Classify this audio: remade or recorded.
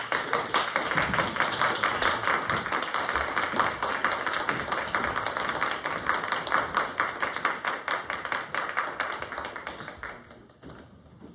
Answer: recorded